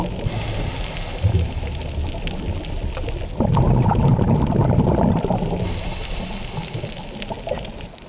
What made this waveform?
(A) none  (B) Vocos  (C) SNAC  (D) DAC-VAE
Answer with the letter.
A